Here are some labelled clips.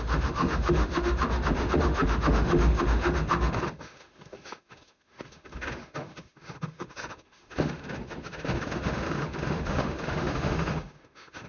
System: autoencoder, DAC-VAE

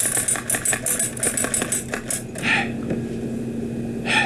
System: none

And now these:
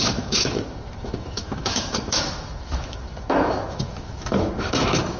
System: autoencoder, DAC-VAE